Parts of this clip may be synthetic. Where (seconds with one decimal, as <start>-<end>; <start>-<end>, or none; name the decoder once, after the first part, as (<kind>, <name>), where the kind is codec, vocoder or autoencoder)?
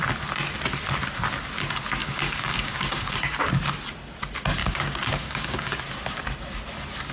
2.0-3.4 (codec, DAC); 4.6-5.8